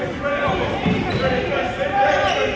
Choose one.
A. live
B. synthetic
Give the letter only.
A